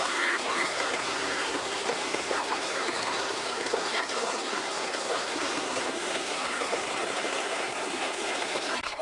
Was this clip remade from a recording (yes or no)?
yes